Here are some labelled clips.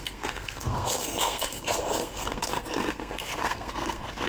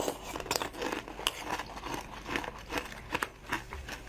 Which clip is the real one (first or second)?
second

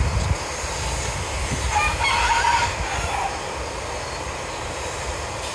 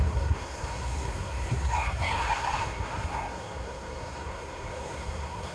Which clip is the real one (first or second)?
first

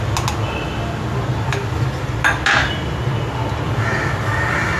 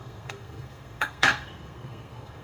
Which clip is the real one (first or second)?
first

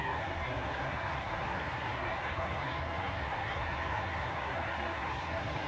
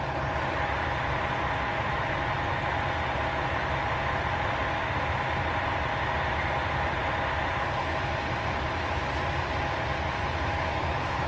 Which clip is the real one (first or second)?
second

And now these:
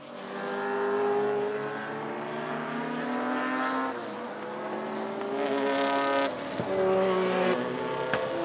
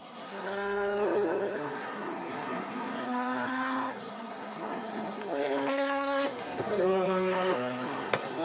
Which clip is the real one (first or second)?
first